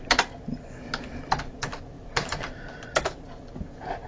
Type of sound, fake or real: real